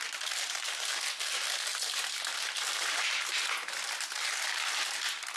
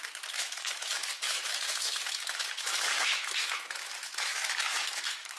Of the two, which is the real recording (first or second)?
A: first